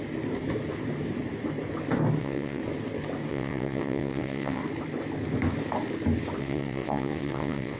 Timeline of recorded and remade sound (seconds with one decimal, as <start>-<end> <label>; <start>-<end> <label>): 0.0-2.2 recorded; 2.2-2.6 remade; 2.6-3.3 recorded; 3.3-4.6 remade; 4.6-6.4 recorded; 6.4-7.8 remade